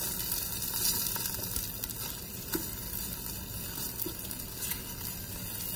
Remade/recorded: recorded